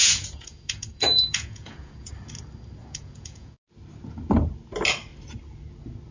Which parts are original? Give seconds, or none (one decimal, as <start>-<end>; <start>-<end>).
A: 2.1-2.8; 3.7-6.1